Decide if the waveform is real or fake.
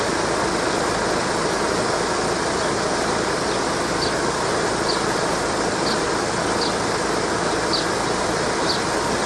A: real